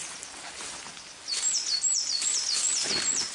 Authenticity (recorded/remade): recorded